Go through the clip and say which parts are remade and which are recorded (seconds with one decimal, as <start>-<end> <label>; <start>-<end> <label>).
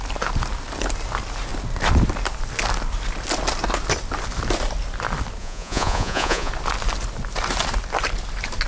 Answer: 0.0-5.4 recorded; 5.4-6.5 remade; 6.5-8.7 recorded